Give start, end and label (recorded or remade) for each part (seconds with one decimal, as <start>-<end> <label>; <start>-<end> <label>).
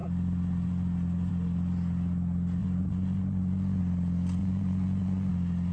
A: 0.0-2.6 recorded; 2.6-3.8 remade; 3.8-4.4 recorded; 4.4-5.3 remade; 5.3-5.7 recorded